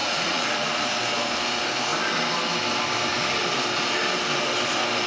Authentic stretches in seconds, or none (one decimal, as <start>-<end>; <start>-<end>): 0.9-5.1